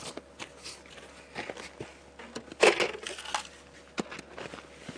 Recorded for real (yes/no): yes